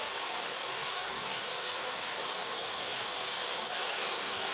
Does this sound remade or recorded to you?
remade